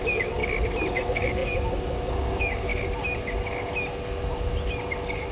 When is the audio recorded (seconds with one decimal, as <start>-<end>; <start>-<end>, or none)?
0.4-0.9; 2.7-5.3